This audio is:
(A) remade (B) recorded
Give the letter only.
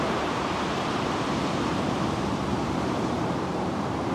A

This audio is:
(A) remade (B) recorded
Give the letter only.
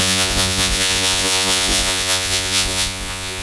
A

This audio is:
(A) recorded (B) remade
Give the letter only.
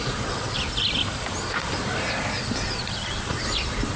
A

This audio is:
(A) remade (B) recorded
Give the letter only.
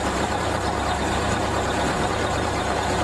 A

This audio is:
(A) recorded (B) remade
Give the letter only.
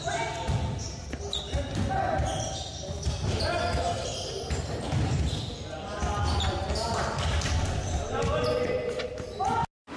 A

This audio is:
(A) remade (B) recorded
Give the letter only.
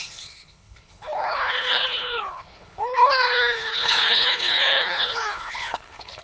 A